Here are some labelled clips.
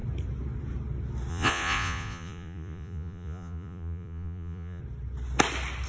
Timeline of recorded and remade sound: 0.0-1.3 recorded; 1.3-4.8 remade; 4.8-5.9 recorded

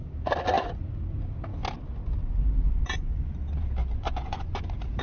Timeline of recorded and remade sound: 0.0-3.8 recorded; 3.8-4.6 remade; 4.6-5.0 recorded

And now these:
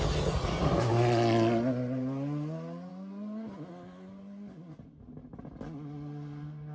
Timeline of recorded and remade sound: 0.0-6.7 recorded